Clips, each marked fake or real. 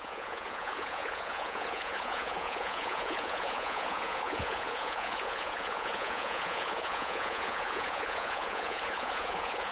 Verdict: fake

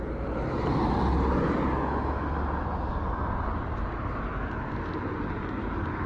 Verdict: real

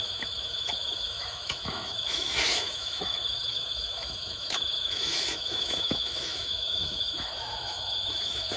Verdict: fake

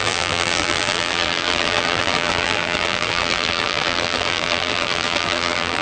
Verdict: fake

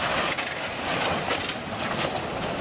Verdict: real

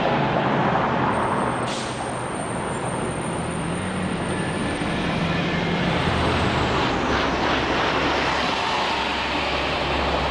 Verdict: fake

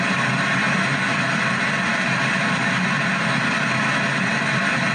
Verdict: real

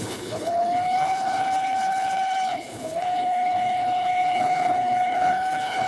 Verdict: fake